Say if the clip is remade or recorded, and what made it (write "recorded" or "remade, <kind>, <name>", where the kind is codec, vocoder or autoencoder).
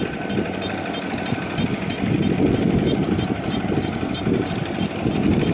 recorded